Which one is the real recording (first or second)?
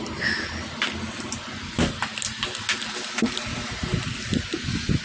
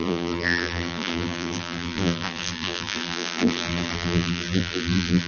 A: first